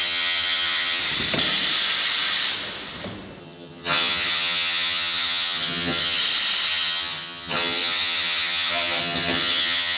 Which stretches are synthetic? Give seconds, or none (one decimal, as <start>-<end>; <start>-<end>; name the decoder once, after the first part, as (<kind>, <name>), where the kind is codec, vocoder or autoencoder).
0.0-1.0 (vocoder, HiFi-GAN); 3.4-6.2; 6.7-10.0